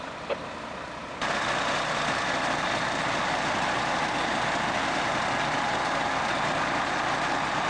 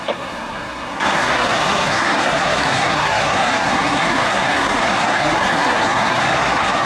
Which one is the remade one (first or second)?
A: second